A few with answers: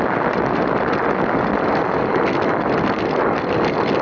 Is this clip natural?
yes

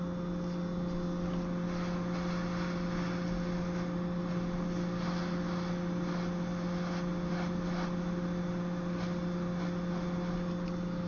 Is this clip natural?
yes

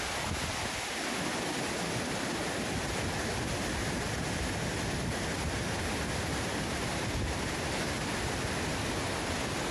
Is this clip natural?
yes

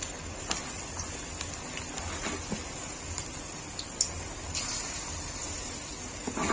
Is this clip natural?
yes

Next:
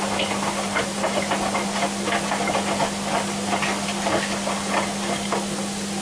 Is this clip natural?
yes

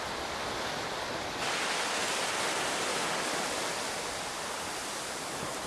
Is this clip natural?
yes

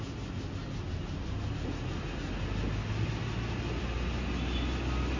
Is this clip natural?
yes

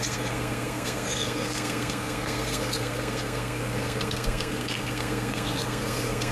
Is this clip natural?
no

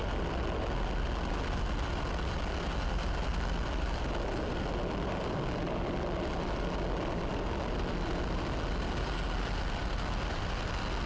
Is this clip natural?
yes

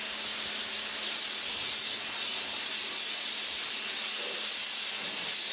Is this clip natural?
yes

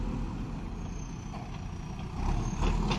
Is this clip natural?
yes